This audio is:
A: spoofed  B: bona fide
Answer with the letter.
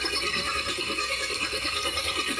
A